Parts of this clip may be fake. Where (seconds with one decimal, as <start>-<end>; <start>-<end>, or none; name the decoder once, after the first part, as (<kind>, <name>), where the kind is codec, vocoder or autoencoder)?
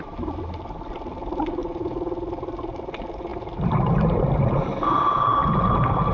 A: none